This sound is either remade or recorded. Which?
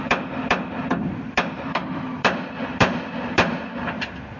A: remade